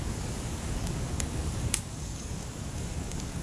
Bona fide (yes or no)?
no